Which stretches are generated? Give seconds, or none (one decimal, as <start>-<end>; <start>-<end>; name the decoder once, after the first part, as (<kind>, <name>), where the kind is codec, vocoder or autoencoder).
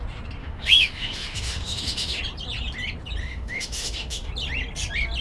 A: 0.4-2.2 (autoencoder, DAC-VAE); 3.2-4.3